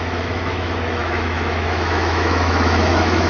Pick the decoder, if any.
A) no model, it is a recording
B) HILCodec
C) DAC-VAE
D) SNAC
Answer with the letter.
C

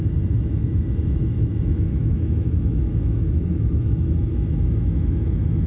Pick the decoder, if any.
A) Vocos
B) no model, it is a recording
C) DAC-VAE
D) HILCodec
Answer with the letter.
C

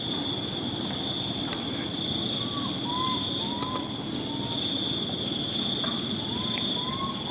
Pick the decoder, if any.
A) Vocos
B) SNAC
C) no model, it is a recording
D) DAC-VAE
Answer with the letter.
C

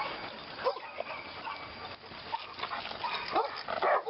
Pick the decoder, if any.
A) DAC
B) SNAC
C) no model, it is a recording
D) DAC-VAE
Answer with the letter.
C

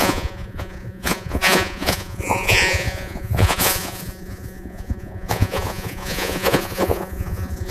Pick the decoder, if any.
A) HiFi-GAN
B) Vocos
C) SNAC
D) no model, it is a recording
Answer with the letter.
B